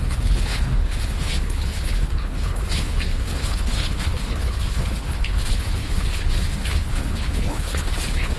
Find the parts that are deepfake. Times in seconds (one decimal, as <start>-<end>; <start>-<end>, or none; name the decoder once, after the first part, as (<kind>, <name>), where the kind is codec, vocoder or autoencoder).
0.0-8.4 (codec, HILCodec)